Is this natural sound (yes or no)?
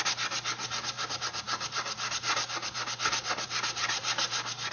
yes